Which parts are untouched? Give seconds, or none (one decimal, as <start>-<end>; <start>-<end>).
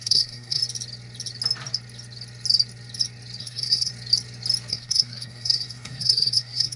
0.6-3.4; 3.9-4.7